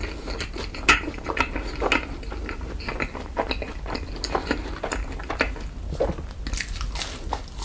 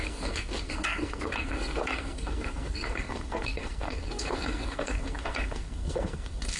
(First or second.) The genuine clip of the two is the first